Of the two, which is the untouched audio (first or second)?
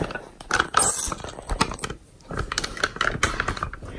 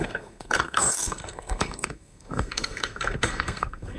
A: first